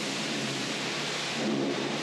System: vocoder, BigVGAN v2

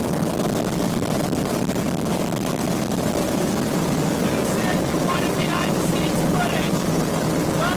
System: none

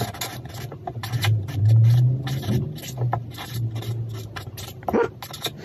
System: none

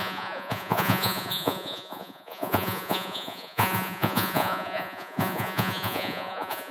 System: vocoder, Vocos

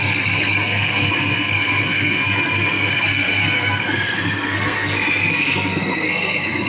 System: codec, SNAC